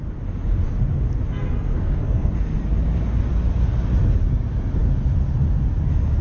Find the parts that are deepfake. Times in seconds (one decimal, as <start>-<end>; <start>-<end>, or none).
1.7-2.3